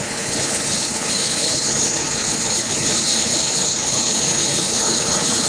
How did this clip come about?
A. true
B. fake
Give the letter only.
B